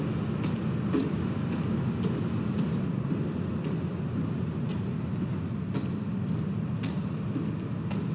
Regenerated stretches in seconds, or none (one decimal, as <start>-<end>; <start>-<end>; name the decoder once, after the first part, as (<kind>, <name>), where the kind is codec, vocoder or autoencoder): none

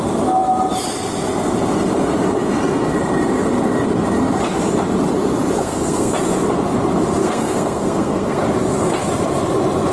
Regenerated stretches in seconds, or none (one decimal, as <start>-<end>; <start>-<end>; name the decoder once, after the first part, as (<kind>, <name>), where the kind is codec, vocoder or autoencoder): 5.6-6.1 (codec, SNAC); 7.2-8.4

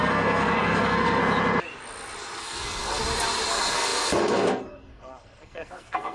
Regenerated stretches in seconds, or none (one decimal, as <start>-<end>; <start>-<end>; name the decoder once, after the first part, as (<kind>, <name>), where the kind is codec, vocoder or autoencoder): 0.0-1.2 (codec, SNAC); 2.4-3.0; 3.5-6.1

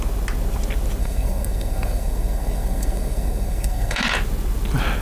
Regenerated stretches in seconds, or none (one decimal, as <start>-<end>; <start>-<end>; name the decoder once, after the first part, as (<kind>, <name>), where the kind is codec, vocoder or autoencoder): 1.0-4.0 (codec, SNAC)

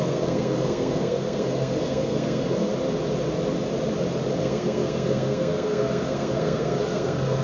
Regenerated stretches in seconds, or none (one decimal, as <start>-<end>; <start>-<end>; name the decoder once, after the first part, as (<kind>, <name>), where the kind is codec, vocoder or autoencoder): 0.0-2.7 (codec, SNAC); 4.4-7.4